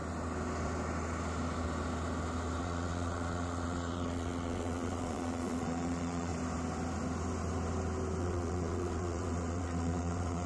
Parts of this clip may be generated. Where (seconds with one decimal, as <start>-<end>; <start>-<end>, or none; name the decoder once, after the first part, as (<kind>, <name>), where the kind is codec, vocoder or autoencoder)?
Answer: 2.6-6.3 (vocoder, Vocos); 8.2-10.5